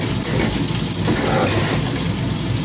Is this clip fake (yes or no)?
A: no